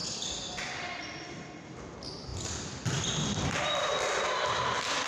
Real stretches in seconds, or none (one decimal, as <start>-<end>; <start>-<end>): 0.0-5.1